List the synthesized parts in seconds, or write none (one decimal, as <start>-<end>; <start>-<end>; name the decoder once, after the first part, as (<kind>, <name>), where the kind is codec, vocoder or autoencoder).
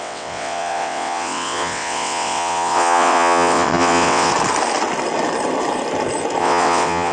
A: 0.0-4.3 (vocoder, WaveNeXt); 6.4-7.1